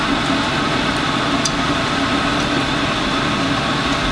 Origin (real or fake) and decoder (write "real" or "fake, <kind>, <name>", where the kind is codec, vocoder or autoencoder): real